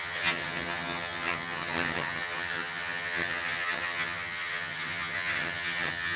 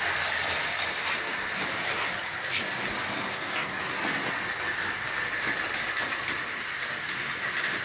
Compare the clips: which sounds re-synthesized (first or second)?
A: first